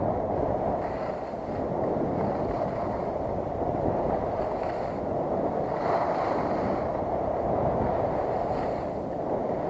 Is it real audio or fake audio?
real